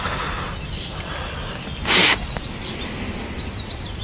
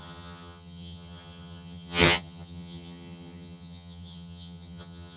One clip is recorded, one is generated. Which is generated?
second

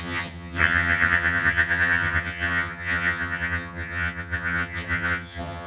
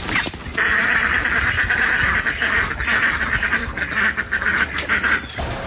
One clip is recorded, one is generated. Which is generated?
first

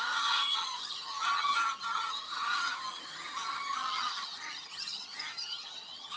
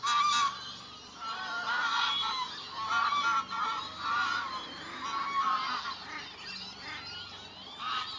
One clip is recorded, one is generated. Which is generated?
first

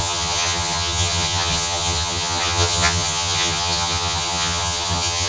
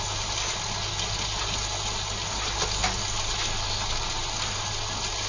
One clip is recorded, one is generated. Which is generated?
first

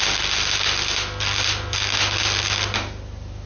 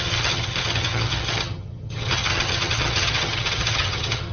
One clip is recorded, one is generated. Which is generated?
second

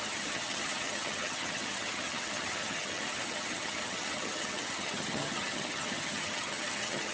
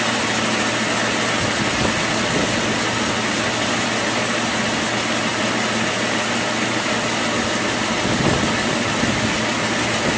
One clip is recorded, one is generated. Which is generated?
first